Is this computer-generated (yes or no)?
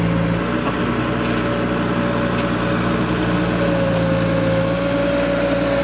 no